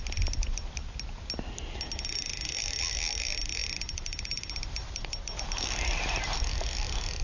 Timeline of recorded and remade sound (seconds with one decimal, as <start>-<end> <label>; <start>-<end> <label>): 0.0-7.2 recorded

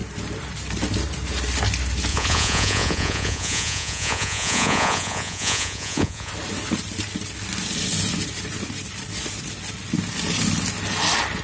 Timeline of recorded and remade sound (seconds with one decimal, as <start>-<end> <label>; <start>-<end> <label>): 0.0-2.1 recorded; 2.1-6.3 remade; 6.3-11.4 recorded

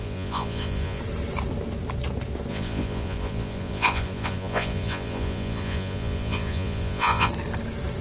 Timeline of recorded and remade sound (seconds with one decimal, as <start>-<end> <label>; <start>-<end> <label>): 0.0-1.0 remade; 1.0-2.5 recorded; 2.5-7.3 remade; 7.3-8.0 recorded

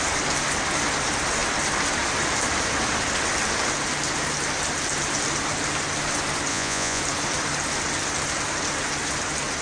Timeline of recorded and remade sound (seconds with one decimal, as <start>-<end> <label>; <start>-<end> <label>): 0.0-6.5 recorded; 6.5-7.0 remade; 7.0-9.6 recorded

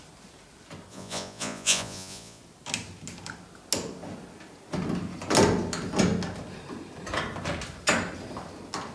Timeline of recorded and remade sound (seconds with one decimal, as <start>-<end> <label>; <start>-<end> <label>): 0.0-0.9 recorded; 0.9-2.4 remade; 2.4-8.9 recorded

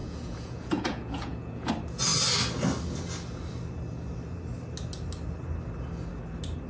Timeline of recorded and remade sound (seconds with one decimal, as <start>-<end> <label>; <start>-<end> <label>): 0.0-1.7 remade; 1.7-6.7 recorded

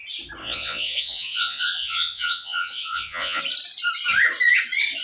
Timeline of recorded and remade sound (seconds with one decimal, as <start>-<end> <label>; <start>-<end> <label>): 0.0-0.4 recorded; 0.4-3.4 remade; 3.4-5.0 recorded

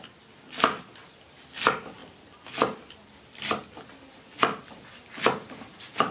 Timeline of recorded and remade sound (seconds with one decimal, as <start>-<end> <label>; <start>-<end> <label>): 0.0-6.1 recorded